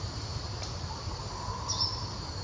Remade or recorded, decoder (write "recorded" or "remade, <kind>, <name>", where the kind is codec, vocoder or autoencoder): remade, vocoder, BigVGAN v2